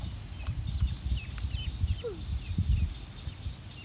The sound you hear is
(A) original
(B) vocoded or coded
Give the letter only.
A